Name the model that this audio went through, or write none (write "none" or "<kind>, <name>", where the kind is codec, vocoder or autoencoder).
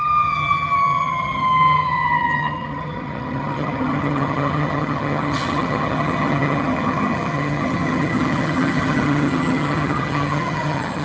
vocoder, HiFi-GAN